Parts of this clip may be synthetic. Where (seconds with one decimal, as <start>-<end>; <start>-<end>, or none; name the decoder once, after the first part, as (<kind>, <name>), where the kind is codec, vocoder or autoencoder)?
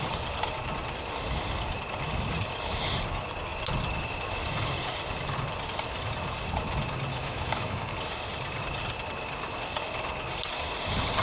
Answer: 7.1-7.9 (autoencoder, DAC-VAE)